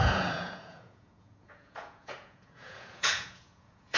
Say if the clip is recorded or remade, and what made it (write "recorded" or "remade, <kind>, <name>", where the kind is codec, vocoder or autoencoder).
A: remade, vocoder, Vocos